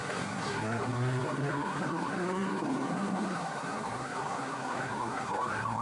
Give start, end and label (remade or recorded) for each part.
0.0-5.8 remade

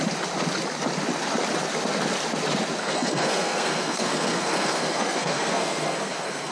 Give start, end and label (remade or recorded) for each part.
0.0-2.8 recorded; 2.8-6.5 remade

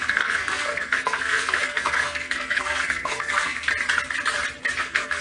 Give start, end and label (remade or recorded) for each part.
0.0-3.7 remade; 3.7-4.8 recorded; 4.8-5.2 remade

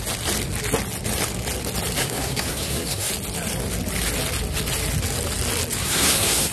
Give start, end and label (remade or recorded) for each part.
0.0-2.0 recorded; 2.0-3.1 remade; 3.1-5.8 recorded; 5.8-6.5 remade

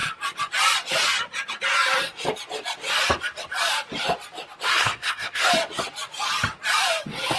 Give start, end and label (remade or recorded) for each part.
0.0-4.7 recorded; 4.7-5.5 remade; 5.5-7.4 recorded

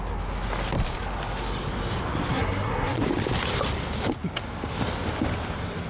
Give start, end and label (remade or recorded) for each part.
0.0-2.3 recorded; 2.3-3.0 remade; 3.0-5.9 recorded

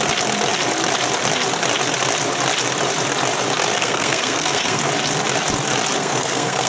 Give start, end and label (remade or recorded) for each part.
0.0-3.7 recorded; 3.7-4.8 remade; 4.8-6.0 recorded; 6.0-6.7 remade

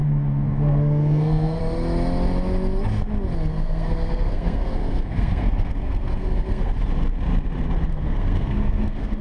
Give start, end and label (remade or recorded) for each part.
0.0-1.6 remade; 1.6-3.5 recorded; 3.5-6.7 remade; 6.7-7.9 recorded; 7.9-9.2 remade